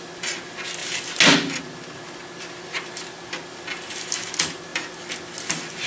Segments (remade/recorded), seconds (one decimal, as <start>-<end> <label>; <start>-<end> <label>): 0.0-5.9 recorded